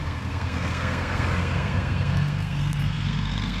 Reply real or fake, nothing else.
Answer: fake